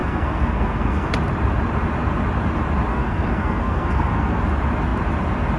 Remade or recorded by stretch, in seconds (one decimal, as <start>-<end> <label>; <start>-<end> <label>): 0.0-1.1 remade; 1.1-2.9 recorded; 2.9-4.4 remade; 4.4-5.6 recorded